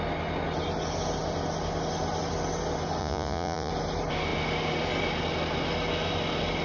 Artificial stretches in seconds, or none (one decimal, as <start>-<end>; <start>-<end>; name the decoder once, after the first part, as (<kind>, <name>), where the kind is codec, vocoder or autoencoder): 3.0-3.7 (vocoder, Vocos)